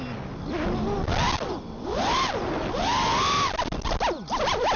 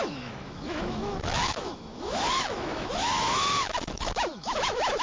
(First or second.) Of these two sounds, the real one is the first